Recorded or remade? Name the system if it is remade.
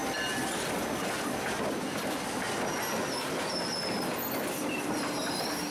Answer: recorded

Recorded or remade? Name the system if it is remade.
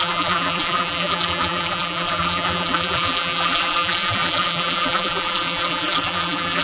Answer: remade, vocoder, BigVGAN v2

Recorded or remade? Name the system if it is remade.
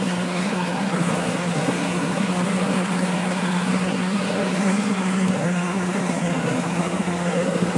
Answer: remade, codec, SNAC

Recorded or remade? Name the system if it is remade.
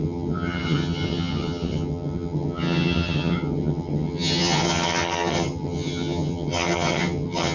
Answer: remade, vocoder, HiFi-GAN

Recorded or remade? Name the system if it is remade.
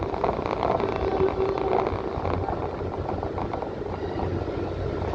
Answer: recorded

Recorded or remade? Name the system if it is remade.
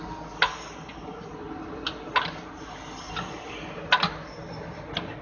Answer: recorded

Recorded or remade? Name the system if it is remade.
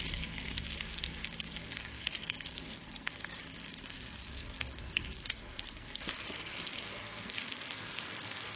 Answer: remade, codec, SNAC